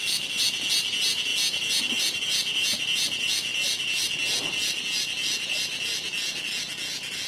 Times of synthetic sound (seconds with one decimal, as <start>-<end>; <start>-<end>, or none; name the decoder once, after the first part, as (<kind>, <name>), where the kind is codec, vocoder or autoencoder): none